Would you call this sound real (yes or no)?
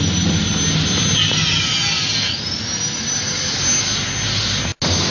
yes